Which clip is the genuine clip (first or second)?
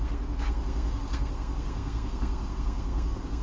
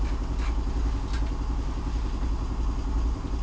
second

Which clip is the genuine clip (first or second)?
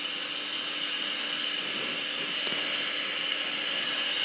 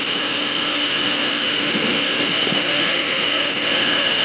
first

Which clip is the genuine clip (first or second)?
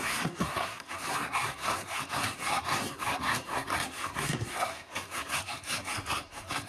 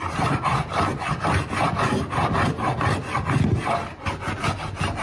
second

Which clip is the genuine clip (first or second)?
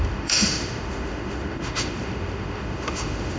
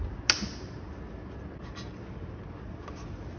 second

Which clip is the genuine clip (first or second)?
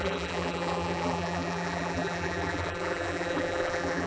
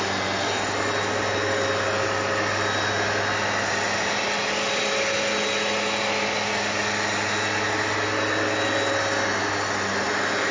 second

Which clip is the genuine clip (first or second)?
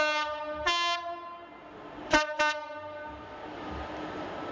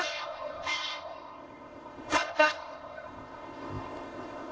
first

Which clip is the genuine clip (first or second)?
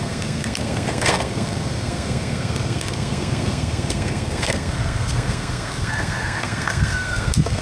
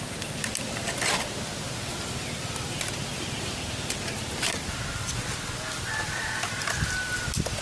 second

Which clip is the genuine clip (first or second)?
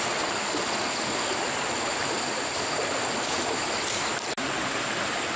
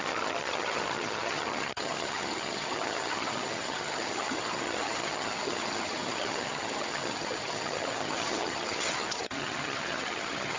first